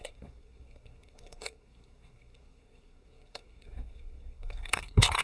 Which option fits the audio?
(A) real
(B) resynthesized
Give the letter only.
B